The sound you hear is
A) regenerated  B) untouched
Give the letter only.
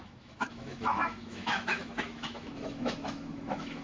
A